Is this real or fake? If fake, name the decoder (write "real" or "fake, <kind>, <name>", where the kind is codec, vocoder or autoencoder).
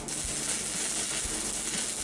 real